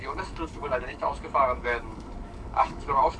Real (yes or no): no